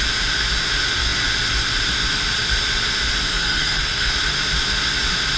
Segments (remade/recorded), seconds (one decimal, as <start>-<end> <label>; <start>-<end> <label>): 0.0-3.3 recorded; 3.3-4.1 remade; 4.1-5.4 recorded

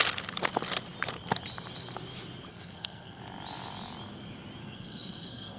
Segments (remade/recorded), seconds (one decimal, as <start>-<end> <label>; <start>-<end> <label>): 0.0-2.5 recorded; 2.5-3.2 remade; 3.2-4.6 recorded; 4.6-5.6 remade

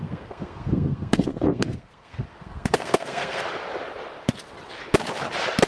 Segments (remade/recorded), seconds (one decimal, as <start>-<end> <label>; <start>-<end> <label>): 0.0-3.4 remade; 3.4-5.7 recorded

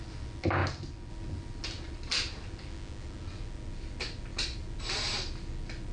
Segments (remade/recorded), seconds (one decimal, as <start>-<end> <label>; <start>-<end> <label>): 0.0-5.9 recorded

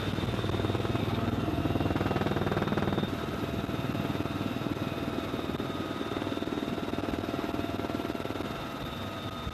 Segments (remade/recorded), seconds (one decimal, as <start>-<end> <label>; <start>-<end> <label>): 0.0-1.0 recorded; 1.0-1.6 remade; 1.6-9.5 recorded

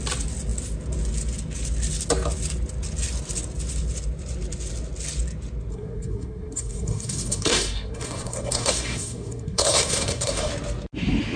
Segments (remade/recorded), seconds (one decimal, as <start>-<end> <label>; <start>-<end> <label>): 0.0-5.7 recorded; 5.7-10.5 remade; 10.5-11.4 recorded

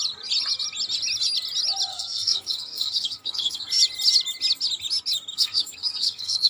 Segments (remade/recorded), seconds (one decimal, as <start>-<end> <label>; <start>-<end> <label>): 0.0-1.9 recorded; 1.9-3.7 remade; 3.7-5.3 recorded; 5.3-6.5 remade